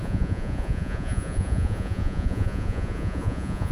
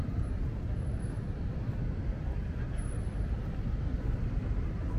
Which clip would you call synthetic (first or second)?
first